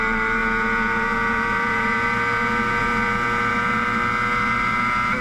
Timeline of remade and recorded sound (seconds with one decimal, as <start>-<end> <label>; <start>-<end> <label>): 0.0-0.4 recorded; 0.4-3.5 remade; 3.5-5.2 recorded